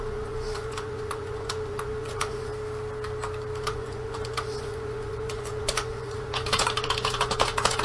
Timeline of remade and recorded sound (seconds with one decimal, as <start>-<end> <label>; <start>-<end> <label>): 0.0-2.5 remade; 2.5-3.6 recorded; 3.6-7.8 remade